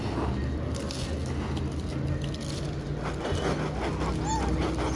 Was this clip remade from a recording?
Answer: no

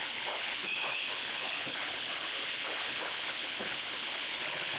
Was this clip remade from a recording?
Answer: yes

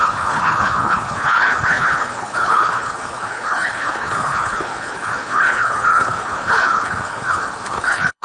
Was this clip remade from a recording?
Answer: yes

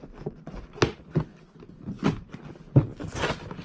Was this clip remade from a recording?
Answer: no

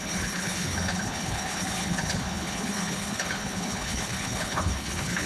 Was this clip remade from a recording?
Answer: yes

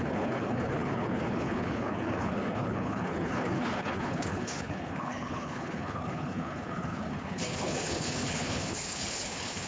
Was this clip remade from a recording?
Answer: yes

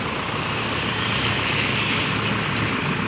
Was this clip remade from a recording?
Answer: no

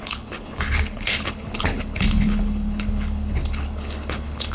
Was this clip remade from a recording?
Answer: yes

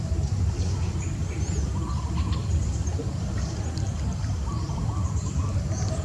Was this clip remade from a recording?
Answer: no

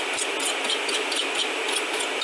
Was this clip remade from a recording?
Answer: no